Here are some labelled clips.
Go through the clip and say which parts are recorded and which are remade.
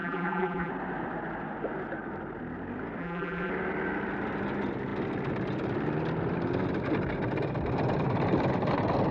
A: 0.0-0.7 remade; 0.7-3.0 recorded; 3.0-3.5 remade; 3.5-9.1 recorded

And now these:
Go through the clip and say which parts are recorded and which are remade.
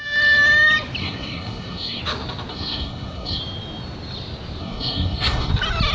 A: 0.0-1.0 recorded; 1.0-2.0 remade; 2.0-2.5 recorded; 2.5-3.4 remade; 3.4-4.6 recorded; 4.6-5.5 remade; 5.5-5.9 recorded